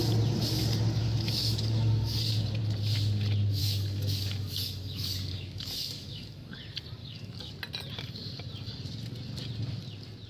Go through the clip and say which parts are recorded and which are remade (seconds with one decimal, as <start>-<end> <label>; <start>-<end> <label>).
0.0-1.0 recorded; 1.0-2.3 remade; 2.3-3.6 recorded; 3.6-6.6 remade; 6.6-7.0 recorded; 7.0-7.5 remade; 7.5-10.3 recorded